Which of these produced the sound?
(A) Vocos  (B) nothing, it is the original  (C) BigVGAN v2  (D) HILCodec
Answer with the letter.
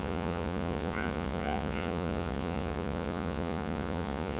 A